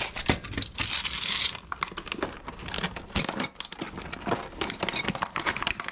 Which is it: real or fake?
real